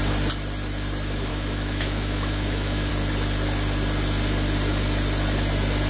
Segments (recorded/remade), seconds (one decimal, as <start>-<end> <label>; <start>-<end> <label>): 0.0-1.3 recorded; 1.3-2.9 remade; 2.9-5.9 recorded